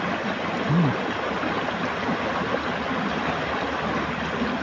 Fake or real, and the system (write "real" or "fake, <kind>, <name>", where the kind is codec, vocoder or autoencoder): real